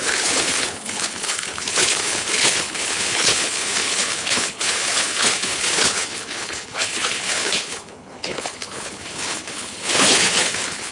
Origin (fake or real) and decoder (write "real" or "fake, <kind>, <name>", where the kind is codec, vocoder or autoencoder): fake, codec, HILCodec